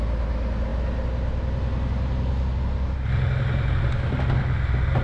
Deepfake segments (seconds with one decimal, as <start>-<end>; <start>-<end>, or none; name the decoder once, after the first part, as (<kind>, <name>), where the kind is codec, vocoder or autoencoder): none

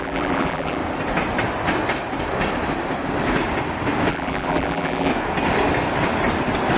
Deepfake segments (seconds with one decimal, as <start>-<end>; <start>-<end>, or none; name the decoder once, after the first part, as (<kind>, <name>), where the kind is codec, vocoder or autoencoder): 0.0-0.8 (vocoder, BigVGAN v2); 4.1-5.1

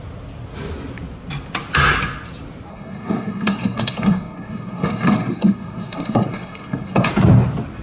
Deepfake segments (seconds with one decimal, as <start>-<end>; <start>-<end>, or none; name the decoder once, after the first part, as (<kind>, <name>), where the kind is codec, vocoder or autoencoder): 2.7-7.1 (codec, SNAC)

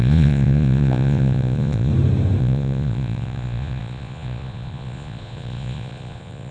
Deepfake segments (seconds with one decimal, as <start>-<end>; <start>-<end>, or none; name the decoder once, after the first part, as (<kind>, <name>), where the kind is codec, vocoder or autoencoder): 0.0-1.9 (vocoder, Vocos); 2.4-6.5

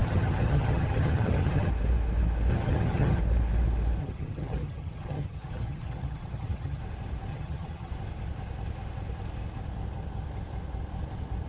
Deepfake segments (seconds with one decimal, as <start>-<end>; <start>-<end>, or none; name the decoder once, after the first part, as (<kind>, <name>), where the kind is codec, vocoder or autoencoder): 0.0-1.7 (vocoder, HiFi-GAN); 2.5-3.2; 4.0-6.8; 7.3-7.9

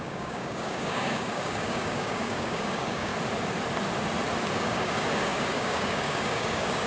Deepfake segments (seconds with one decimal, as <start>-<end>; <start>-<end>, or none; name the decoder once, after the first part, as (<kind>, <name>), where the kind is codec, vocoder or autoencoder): 0.0-3.1 (codec, DAC); 4.5-6.9

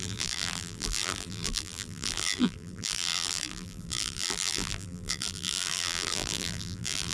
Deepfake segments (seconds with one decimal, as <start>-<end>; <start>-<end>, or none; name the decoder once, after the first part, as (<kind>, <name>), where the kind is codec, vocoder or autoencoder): 0.0-7.1 (vocoder, BigVGAN v2)

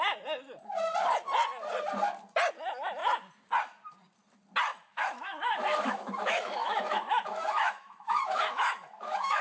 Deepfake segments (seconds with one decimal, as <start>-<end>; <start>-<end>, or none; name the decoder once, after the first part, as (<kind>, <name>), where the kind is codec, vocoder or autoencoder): 4.7-9.4 (autoencoder, DAC-VAE)